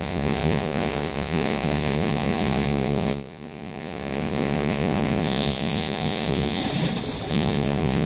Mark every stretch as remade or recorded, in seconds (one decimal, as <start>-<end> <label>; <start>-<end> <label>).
0.0-6.6 remade; 6.6-7.3 recorded; 7.3-8.1 remade